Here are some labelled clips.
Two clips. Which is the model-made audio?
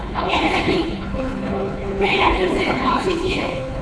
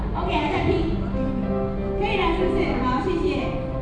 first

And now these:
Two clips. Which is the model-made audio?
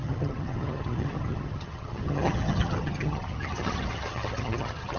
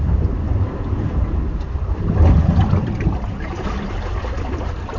first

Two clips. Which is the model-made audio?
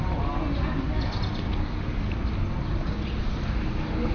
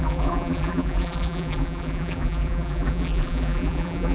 second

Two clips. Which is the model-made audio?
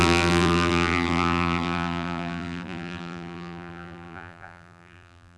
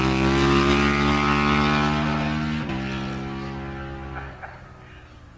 first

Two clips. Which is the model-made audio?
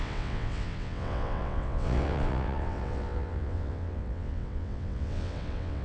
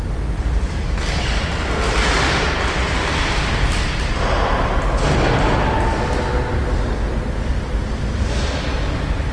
first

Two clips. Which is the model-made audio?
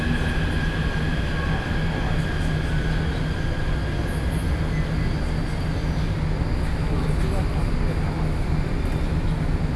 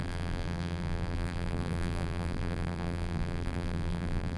second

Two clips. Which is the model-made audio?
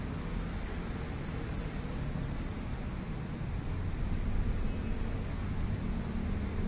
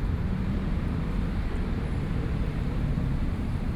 second